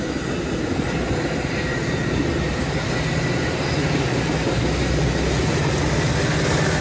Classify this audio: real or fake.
real